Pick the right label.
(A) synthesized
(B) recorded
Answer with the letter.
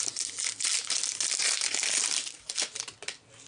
B